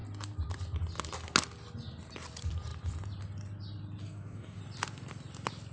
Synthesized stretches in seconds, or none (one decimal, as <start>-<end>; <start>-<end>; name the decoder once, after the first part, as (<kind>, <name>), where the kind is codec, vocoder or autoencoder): 4.0-4.6 (codec, DAC)

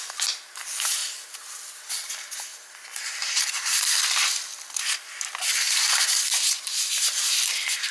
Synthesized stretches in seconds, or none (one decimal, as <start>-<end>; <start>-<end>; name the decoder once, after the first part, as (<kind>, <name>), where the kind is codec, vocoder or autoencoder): 0.0-1.0 (vocoder, BigVGAN v2); 2.1-2.5; 3.0-4.3; 6.5-7.9

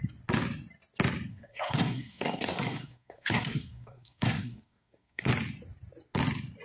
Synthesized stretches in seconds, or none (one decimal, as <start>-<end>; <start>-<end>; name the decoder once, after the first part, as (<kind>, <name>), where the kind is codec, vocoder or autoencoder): 1.3-5.3 (codec, SNAC)

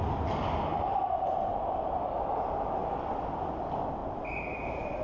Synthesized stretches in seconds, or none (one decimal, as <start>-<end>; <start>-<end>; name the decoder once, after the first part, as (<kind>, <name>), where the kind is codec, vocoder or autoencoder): 0.7-1.6 (vocoder, BigVGAN v2); 4.0-5.0

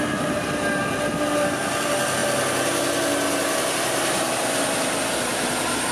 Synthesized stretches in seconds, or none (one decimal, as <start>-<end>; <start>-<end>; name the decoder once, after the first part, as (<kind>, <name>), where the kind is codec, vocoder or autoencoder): none

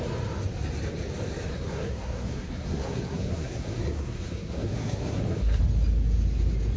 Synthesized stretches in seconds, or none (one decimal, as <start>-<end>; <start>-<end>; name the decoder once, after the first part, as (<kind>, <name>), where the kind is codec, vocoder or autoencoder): 1.5-5.6 (codec, SNAC)